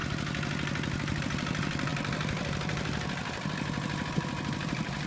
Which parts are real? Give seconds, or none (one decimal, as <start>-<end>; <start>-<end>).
0.0-1.2